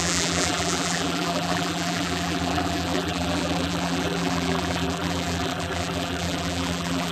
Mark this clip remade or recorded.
remade